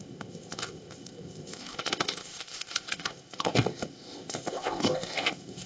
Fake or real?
fake